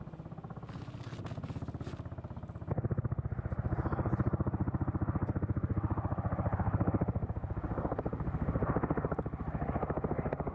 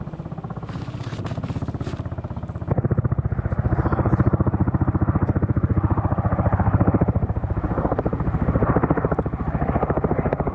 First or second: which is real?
first